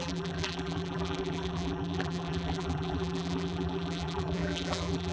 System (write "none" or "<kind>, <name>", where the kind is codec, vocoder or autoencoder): vocoder, BigVGAN v2